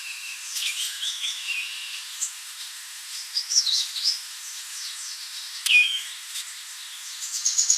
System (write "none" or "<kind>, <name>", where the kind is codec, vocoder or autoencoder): autoencoder, DAC-VAE